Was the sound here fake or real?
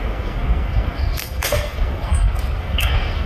fake